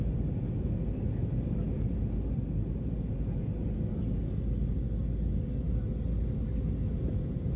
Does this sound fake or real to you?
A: real